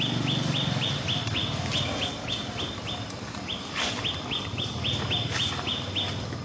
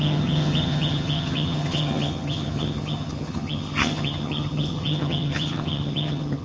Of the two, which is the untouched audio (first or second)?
first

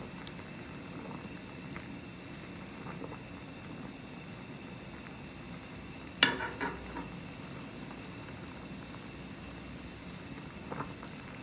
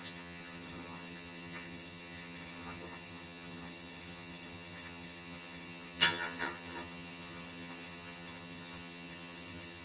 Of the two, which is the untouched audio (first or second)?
first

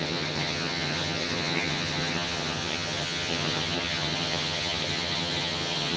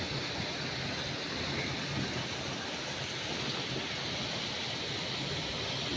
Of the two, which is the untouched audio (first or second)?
second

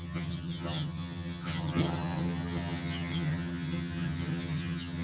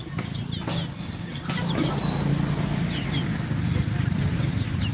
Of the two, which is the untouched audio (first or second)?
second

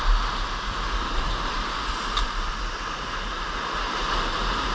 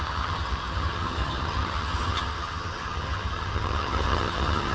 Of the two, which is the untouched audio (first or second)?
first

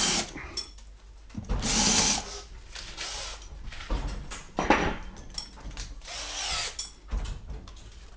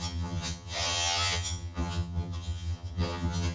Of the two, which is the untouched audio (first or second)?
first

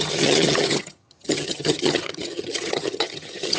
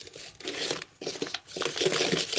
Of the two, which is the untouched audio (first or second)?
second